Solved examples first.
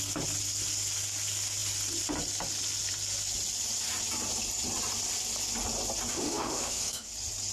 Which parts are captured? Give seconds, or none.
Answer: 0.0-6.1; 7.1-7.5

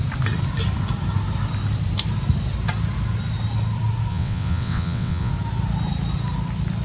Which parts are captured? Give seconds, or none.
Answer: 0.0-4.1; 5.3-6.8

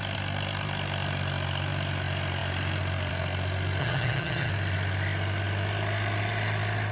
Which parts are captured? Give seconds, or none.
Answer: 0.0-3.8; 4.5-6.9

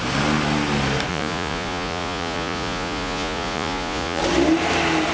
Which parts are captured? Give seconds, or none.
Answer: 0.0-1.1; 4.2-5.1

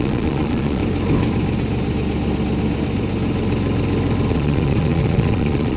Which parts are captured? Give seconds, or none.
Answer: 0.8-4.3